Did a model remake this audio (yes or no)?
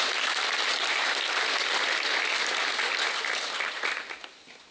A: no